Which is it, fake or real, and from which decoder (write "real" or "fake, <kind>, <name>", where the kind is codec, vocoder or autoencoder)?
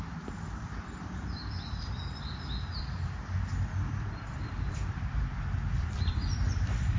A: fake, vocoder, BigVGAN v2